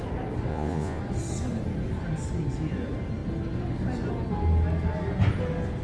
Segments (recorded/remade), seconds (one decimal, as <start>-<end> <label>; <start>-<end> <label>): 0.0-0.5 recorded; 0.5-1.0 remade; 1.0-5.8 recorded